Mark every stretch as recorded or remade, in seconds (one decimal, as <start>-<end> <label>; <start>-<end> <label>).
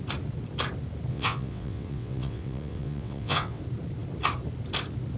0.0-1.1 recorded; 1.1-3.6 remade; 3.6-5.2 recorded